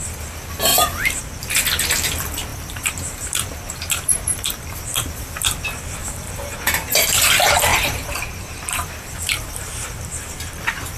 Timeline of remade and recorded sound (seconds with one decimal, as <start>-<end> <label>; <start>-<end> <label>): 0.0-0.7 recorded; 0.7-1.2 remade; 1.2-2.5 recorded; 2.5-5.2 remade; 5.2-6.0 recorded; 6.0-7.2 remade; 7.2-7.7 recorded; 7.7-9.7 remade; 9.7-11.0 recorded